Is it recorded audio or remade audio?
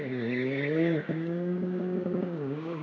remade